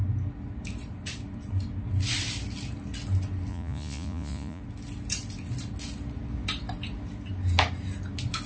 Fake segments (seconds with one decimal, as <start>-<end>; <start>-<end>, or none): 3.5-4.6